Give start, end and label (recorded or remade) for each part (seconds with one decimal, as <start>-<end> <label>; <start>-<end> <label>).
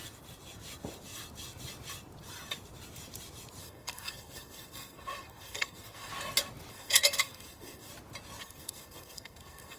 0.0-3.6 recorded; 3.6-6.1 remade; 6.1-6.7 recorded; 6.7-7.9 remade; 7.9-8.4 recorded; 8.4-9.8 remade